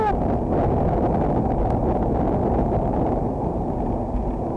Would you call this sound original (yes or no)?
yes